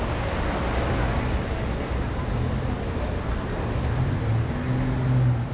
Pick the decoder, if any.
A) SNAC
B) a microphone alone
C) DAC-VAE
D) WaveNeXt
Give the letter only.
B